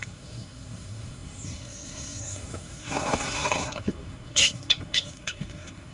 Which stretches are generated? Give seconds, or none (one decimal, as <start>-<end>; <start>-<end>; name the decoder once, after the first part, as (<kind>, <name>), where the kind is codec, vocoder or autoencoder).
0.0-5.9 (codec, SNAC)